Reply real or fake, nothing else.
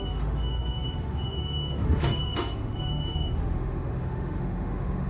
fake